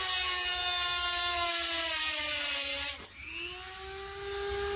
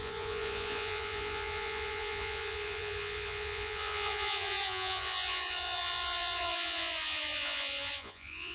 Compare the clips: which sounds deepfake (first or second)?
second